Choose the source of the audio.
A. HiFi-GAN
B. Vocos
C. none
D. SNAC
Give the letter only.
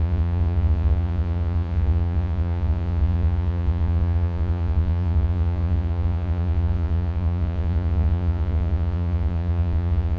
B